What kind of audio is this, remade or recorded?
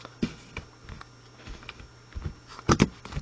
recorded